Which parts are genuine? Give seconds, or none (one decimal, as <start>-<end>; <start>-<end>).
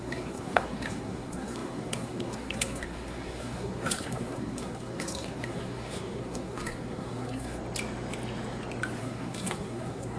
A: 7.6-9.0